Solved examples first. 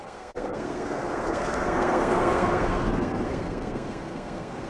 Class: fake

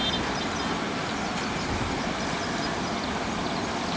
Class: real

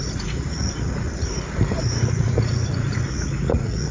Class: fake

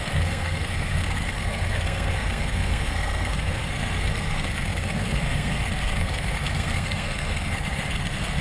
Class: fake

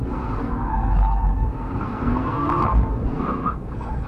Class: fake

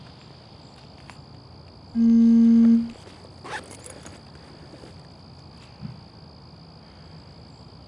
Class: real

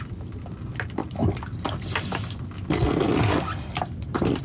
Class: real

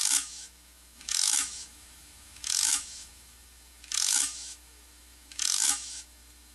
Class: fake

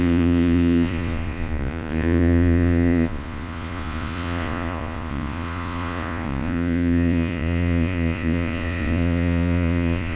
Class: fake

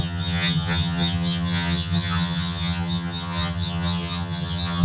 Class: fake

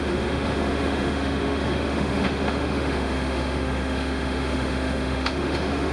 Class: fake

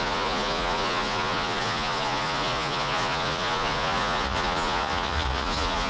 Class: fake